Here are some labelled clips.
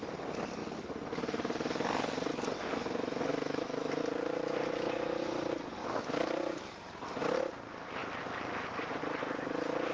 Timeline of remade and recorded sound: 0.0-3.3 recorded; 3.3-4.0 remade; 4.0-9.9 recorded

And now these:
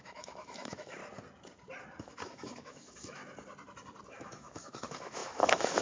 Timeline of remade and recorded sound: 0.0-1.0 remade; 1.0-2.0 recorded; 2.0-3.2 remade; 3.2-4.1 recorded; 4.1-5.8 remade

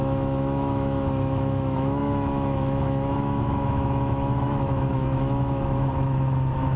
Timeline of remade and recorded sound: 0.0-6.8 remade

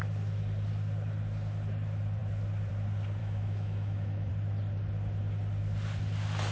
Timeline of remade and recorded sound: 0.0-3.2 recorded; 3.2-4.3 remade; 4.3-6.5 recorded

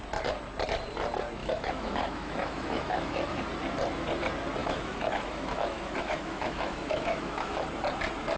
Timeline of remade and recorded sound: 0.0-1.4 recorded; 1.4-3.4 remade; 3.4-4.6 recorded; 4.6-7.7 remade; 7.7-8.4 recorded

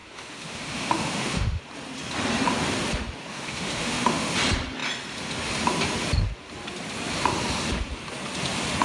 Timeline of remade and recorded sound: 0.0-1.6 remade; 1.6-3.3 recorded; 3.3-4.3 remade; 4.3-8.8 recorded

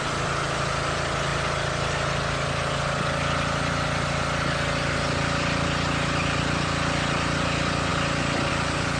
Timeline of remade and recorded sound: 0.0-9.0 recorded